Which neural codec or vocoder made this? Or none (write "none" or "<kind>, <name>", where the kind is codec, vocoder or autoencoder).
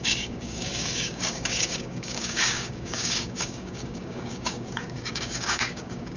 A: codec, DAC